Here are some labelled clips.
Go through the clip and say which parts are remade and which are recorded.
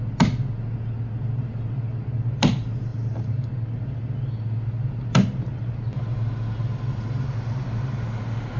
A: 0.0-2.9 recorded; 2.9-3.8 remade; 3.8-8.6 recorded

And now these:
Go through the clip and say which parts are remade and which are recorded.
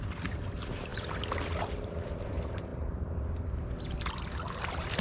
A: 0.0-2.7 remade; 2.7-4.1 recorded; 4.1-5.0 remade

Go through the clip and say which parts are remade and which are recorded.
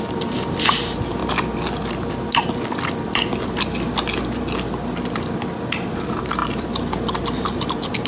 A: 0.0-1.2 remade; 1.2-5.7 recorded; 5.7-8.1 remade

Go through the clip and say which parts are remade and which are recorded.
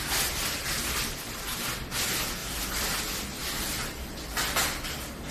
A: 0.0-2.4 recorded; 2.4-3.0 remade; 3.0-3.4 recorded; 3.4-4.4 remade; 4.4-5.3 recorded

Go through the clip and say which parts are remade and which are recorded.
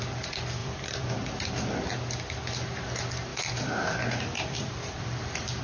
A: 0.0-0.6 recorded; 0.6-1.9 remade; 1.9-3.3 recorded; 3.3-5.6 remade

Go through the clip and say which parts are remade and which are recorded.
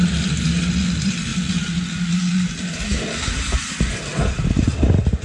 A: 0.0-4.1 recorded; 4.1-4.8 remade; 4.8-5.2 recorded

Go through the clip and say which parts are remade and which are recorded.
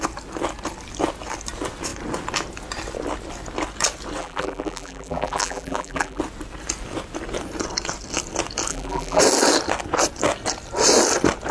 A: 0.0-4.2 recorded; 4.2-6.2 remade; 6.2-8.7 recorded; 8.7-9.2 remade; 9.2-11.5 recorded